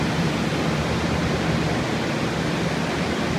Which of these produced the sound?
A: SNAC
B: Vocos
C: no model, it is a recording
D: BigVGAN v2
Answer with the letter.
C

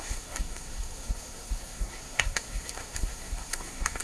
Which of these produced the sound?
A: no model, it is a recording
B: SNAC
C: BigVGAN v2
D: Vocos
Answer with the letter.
B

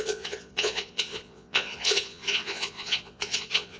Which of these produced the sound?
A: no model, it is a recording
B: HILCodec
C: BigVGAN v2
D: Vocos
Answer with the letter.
D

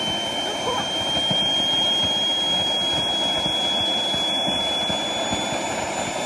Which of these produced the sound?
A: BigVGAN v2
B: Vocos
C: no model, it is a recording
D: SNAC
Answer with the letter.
C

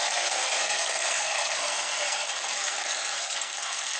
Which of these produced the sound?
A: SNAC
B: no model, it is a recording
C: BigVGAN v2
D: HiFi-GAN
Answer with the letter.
A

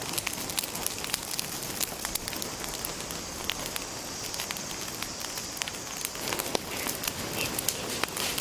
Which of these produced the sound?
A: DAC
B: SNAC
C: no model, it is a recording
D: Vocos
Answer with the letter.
C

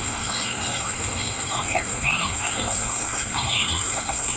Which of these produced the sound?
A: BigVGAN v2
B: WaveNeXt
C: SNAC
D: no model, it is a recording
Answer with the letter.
C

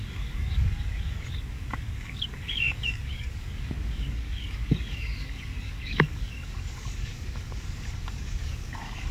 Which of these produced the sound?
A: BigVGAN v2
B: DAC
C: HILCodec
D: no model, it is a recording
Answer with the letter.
B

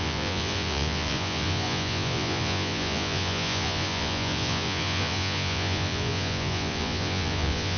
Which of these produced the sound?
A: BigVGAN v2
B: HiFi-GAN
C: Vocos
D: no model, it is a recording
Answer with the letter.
C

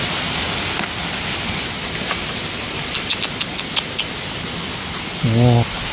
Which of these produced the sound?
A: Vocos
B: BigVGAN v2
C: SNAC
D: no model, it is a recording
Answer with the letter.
D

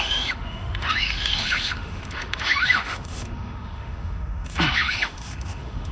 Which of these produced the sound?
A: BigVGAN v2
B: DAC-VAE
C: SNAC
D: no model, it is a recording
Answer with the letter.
B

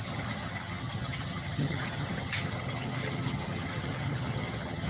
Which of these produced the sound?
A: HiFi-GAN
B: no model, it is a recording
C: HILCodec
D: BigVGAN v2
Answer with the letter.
A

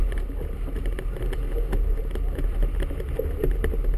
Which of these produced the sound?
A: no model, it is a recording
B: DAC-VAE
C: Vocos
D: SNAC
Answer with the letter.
A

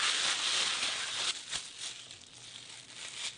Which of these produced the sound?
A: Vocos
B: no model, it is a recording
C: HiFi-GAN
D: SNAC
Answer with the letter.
B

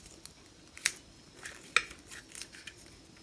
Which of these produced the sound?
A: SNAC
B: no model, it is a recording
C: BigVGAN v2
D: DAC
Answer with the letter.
B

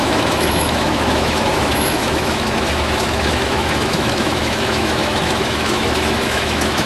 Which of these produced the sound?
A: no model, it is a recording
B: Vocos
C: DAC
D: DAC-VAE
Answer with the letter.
D